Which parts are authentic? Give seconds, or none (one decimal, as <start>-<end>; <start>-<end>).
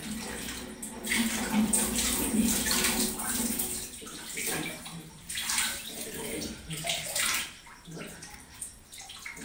0.0-1.0; 3.4-4.5; 8.6-9.4